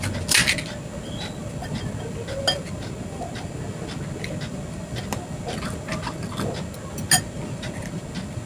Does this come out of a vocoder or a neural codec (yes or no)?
no